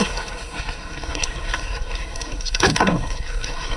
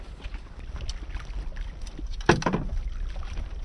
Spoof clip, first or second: first